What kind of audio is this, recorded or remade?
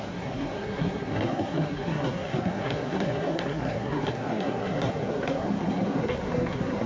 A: remade